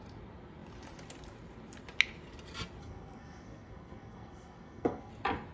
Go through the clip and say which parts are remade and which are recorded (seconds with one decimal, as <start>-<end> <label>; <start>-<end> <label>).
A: 0.0-2.8 recorded; 2.8-5.1 remade; 5.1-5.5 recorded